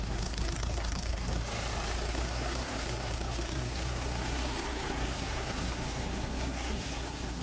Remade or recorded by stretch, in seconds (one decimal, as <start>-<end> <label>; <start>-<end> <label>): 0.0-1.4 remade; 1.4-2.1 recorded; 2.1-7.4 remade